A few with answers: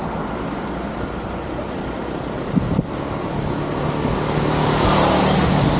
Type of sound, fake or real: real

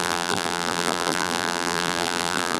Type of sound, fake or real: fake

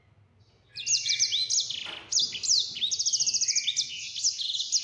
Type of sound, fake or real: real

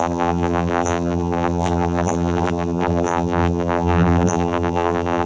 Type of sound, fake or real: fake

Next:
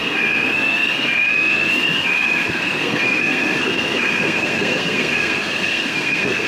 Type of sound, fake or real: fake